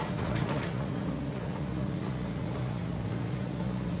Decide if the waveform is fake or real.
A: fake